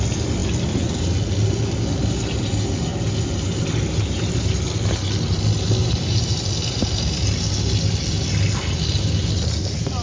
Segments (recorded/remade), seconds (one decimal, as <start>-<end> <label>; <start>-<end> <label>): 0.0-5.8 recorded; 5.8-6.4 remade; 6.4-10.0 recorded